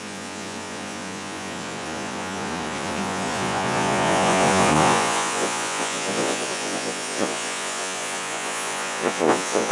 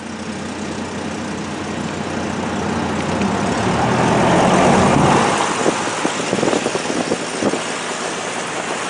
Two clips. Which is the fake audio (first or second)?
first